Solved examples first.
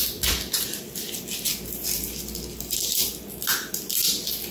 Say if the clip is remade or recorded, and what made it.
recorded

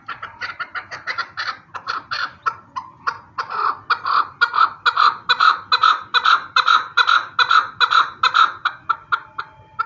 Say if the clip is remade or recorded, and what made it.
recorded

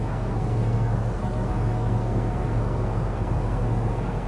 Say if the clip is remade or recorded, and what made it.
remade, codec, SNAC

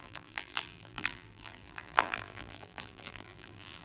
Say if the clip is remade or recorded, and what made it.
remade, vocoder, BigVGAN v2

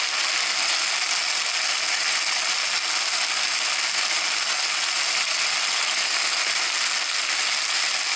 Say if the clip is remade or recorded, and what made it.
recorded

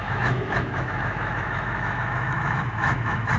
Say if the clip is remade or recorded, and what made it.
remade, autoencoder, DAC-VAE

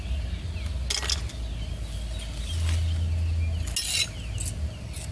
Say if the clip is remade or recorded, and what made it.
recorded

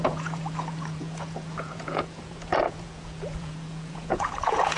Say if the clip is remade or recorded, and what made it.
remade, vocoder, Vocos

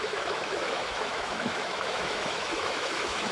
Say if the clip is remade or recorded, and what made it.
remade, autoencoder, DAC-VAE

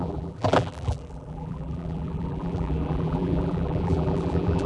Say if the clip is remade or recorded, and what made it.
remade, vocoder, BigVGAN v2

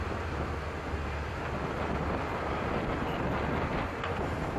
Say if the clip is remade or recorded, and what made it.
recorded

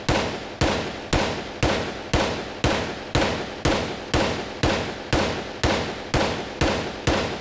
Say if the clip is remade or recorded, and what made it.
recorded